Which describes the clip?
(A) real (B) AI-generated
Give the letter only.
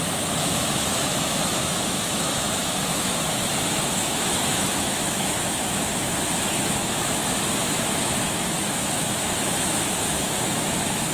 B